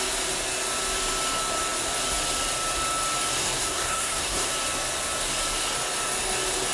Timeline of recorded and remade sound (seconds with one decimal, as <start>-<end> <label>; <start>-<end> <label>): 0.0-3.4 recorded; 3.4-4.5 remade; 4.5-6.7 recorded